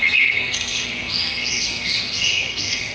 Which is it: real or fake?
fake